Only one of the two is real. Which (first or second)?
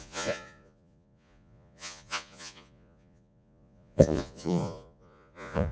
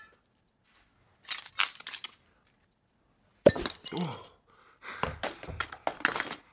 second